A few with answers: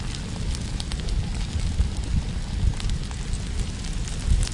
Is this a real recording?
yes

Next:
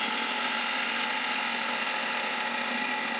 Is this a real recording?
yes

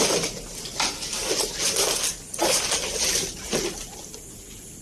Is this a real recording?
yes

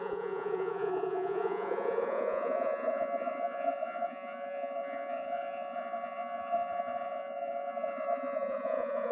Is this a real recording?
no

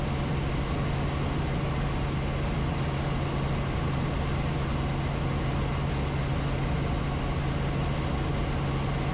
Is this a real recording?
yes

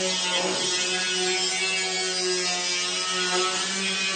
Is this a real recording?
yes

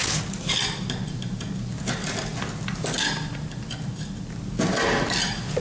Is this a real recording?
yes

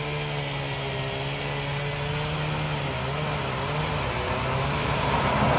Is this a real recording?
yes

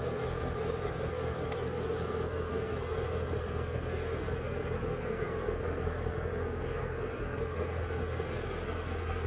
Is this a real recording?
no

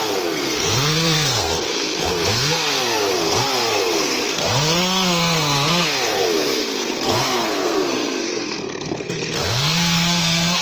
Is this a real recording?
no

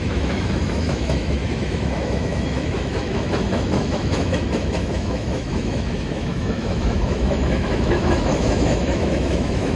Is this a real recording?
no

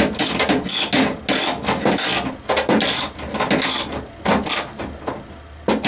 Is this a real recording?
yes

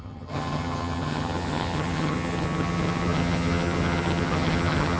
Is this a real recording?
no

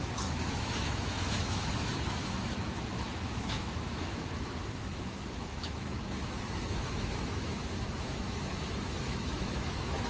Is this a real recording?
no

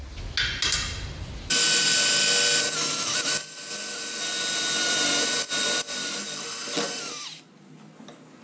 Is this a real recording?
yes